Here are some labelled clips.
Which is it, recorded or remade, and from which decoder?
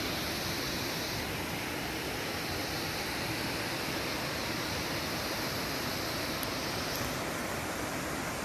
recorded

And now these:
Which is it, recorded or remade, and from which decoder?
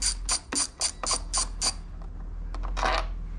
recorded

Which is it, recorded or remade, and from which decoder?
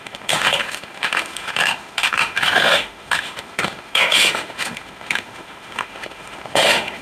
remade, autoencoder, DAC-VAE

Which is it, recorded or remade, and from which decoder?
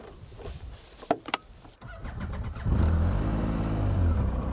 remade, vocoder, BigVGAN v2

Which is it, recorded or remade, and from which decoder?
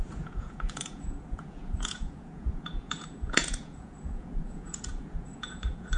remade, vocoder, Vocos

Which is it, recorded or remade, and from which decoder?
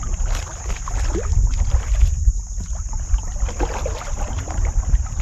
recorded